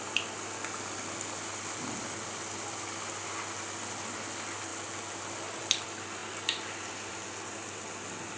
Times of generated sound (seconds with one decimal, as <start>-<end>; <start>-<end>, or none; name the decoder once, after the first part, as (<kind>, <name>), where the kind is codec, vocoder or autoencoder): none